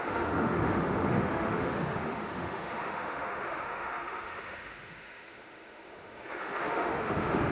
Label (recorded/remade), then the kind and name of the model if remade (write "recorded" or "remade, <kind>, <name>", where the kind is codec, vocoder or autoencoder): remade, autoencoder, DAC-VAE